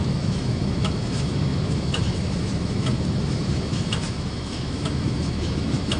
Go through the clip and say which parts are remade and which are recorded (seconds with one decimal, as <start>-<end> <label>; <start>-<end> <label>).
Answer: 0.0-6.0 remade